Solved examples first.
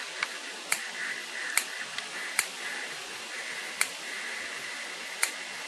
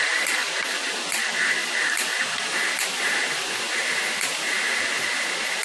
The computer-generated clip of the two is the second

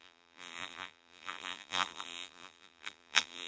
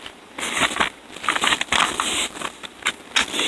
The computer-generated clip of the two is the first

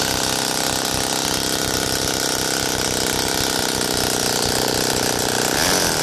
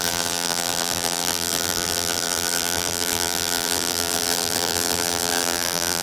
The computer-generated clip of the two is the second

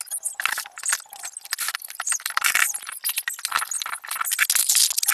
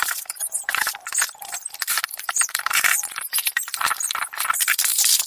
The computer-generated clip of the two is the second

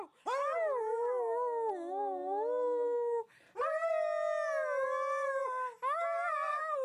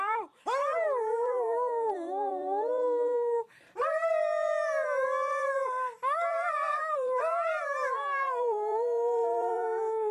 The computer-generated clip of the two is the second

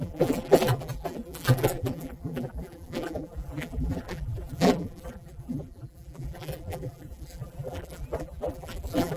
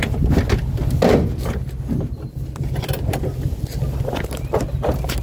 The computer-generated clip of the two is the first